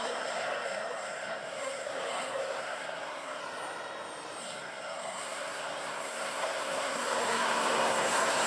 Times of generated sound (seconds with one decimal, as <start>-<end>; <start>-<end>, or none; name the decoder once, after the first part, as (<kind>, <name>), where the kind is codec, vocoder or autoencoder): 0.0-3.4 (codec, SNAC); 4.4-8.5